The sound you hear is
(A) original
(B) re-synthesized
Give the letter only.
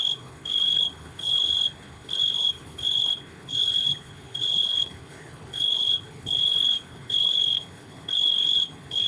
B